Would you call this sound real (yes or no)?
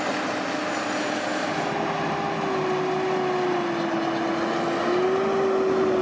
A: yes